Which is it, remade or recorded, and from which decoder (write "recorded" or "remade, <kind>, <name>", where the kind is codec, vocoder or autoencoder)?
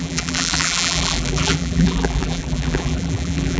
remade, vocoder, BigVGAN v2